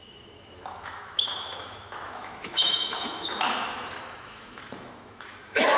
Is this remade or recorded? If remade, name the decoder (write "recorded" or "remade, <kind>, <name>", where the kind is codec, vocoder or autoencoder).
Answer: remade, autoencoder, DAC-VAE